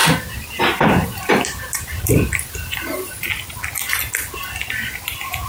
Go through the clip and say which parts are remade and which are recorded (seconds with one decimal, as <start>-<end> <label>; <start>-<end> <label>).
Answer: 0.0-3.3 remade; 3.3-5.5 recorded